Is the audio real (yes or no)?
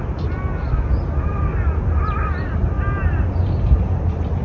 yes